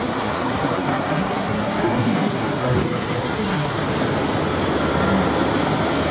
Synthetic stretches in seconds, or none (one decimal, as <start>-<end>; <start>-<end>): 0.0-3.8